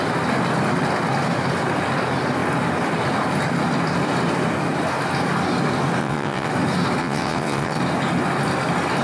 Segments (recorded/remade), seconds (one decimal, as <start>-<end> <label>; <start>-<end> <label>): 0.0-6.0 recorded; 6.0-6.5 remade; 6.5-7.0 recorded; 7.0-7.8 remade; 7.8-9.0 recorded